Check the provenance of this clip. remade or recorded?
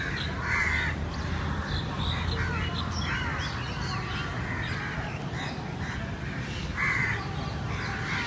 recorded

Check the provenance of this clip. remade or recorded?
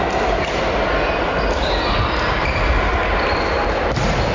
recorded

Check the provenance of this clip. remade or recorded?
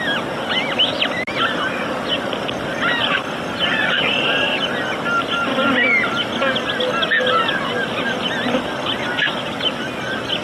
recorded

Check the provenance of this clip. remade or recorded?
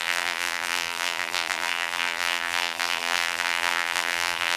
remade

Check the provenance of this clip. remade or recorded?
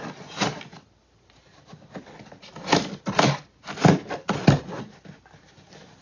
remade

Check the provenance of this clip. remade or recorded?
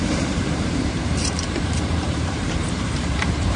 remade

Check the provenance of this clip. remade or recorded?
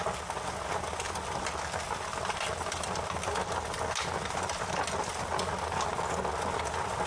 recorded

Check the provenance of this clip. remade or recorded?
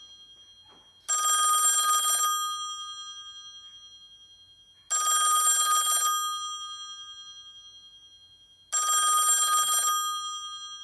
recorded